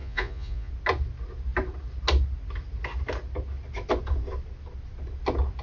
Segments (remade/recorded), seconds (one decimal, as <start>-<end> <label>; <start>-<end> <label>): 0.0-0.7 remade; 0.7-5.6 recorded